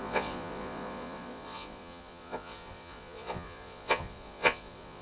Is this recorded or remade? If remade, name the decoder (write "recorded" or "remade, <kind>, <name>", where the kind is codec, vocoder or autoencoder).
remade, vocoder, Vocos